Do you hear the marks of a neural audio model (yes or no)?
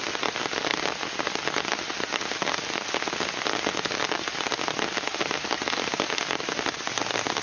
no